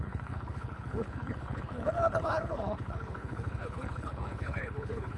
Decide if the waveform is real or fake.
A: fake